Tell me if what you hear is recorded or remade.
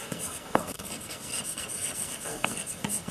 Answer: remade